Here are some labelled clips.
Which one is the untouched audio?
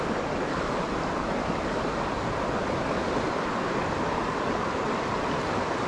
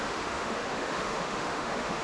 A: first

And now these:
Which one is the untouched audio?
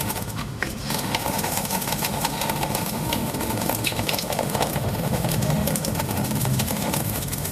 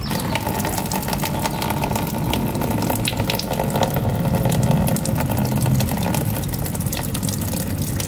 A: second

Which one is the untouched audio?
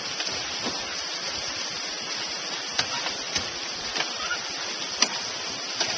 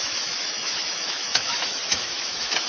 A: first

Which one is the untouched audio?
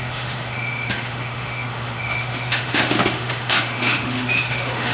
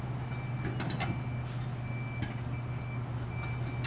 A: second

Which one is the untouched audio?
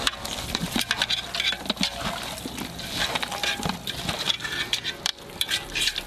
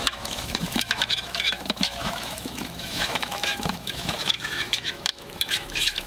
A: first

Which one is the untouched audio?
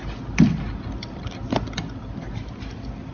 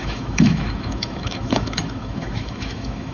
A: first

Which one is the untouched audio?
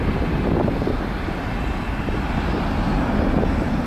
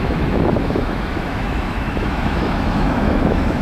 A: first